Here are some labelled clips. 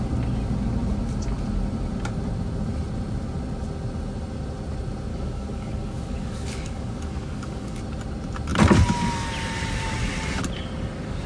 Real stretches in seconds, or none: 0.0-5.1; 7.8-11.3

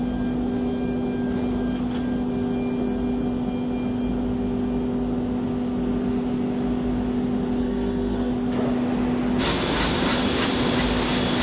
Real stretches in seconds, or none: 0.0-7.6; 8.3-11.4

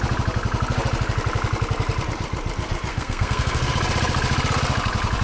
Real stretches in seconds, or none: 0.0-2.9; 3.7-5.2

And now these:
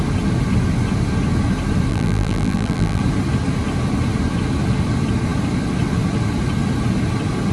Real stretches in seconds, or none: 0.0-1.9; 3.0-7.5

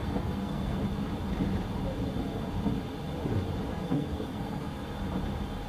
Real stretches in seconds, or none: 0.8-3.7; 4.9-5.7